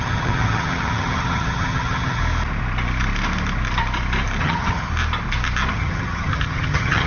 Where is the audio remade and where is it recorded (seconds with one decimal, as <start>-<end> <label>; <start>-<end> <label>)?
0.0-2.2 remade; 2.2-4.4 recorded; 4.4-4.9 remade; 4.9-5.7 recorded; 5.7-7.1 remade